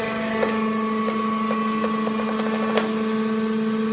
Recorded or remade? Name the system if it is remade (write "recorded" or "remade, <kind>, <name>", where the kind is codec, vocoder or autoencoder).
recorded